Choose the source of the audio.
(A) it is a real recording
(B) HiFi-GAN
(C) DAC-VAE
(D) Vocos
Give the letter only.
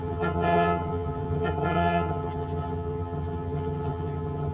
B